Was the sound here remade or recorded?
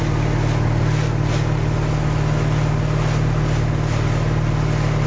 recorded